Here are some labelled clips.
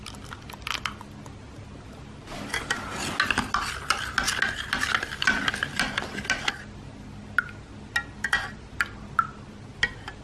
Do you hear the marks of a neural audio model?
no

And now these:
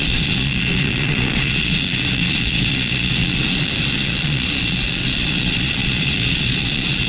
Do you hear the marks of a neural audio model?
yes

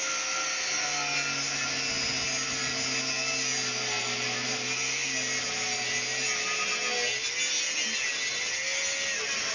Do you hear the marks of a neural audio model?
no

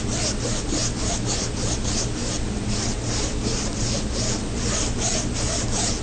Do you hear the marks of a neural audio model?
no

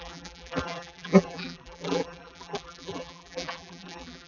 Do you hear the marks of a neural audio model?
yes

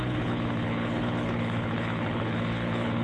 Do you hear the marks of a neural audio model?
yes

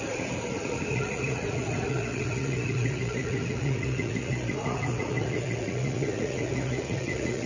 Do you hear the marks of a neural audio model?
yes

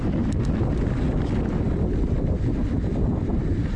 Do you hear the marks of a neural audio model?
no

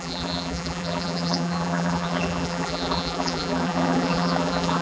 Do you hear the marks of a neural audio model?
yes